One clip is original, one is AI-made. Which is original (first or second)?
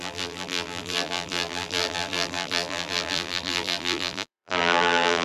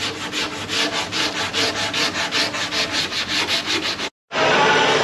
second